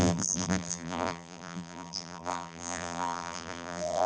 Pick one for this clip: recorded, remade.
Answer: remade